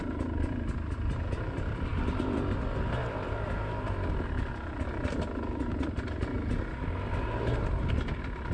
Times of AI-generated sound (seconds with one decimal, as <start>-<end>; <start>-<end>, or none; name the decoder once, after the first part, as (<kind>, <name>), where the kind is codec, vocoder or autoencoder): none